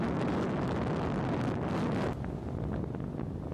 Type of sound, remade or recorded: recorded